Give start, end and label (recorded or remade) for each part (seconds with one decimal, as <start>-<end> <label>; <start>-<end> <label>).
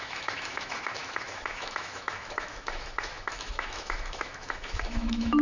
0.0-5.4 remade